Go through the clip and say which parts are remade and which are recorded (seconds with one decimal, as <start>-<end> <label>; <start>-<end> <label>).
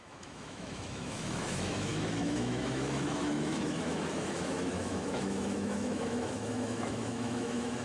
0.0-7.8 remade